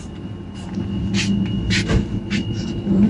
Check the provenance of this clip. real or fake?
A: real